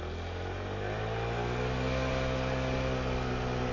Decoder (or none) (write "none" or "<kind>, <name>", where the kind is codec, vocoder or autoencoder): none